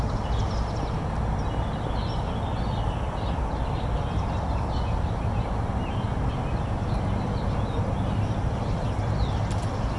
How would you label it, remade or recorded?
recorded